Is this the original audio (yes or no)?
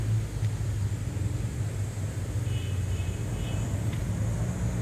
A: yes